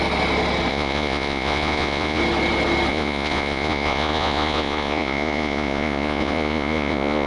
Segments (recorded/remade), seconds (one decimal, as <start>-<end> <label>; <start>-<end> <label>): 0.0-0.7 recorded; 0.7-2.2 remade; 2.2-2.9 recorded; 2.9-7.3 remade